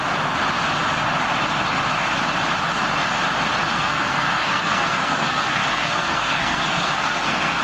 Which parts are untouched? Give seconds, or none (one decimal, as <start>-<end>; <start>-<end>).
0.0-3.7